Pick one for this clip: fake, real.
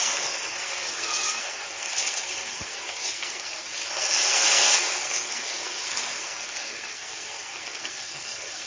fake